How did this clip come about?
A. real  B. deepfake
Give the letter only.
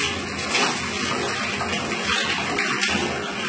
A